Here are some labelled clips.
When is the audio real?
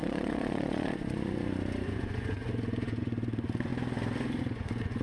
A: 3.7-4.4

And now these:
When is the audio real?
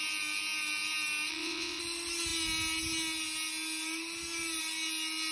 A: 0.0-1.3; 1.8-5.3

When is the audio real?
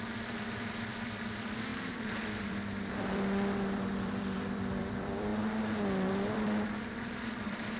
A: 5.3-6.1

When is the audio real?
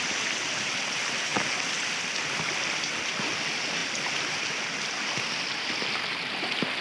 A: 0.0-6.8